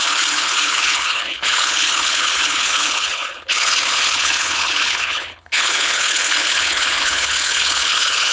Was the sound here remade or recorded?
remade